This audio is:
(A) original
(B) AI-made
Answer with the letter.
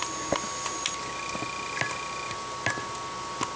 A